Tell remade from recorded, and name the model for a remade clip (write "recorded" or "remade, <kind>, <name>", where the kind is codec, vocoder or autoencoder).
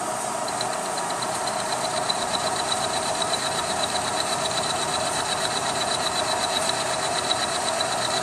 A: remade, vocoder, BigVGAN v2